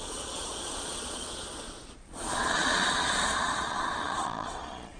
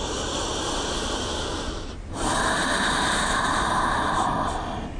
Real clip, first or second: second